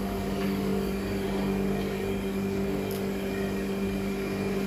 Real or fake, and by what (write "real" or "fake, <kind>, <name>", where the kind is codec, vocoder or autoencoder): fake, codec, DAC